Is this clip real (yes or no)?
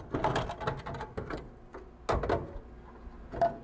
yes